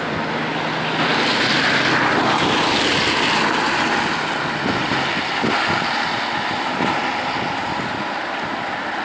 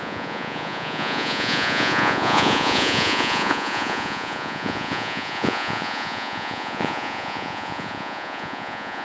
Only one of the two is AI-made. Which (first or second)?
second